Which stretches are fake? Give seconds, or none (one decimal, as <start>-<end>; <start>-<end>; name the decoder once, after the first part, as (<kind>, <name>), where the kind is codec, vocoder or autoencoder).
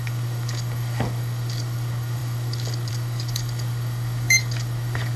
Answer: 0.0-5.2 (codec, DAC)